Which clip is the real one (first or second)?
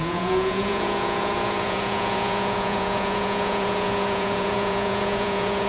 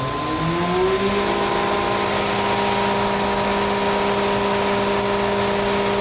second